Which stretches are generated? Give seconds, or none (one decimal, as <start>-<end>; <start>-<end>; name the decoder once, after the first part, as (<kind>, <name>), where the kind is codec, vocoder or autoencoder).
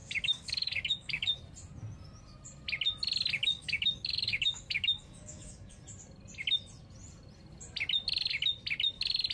0.0-1.4 (codec, DAC); 3.4-5.8